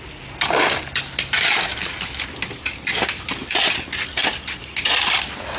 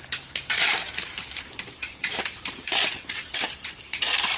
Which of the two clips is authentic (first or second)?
first